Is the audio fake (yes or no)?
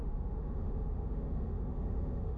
yes